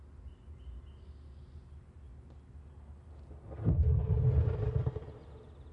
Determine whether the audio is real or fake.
real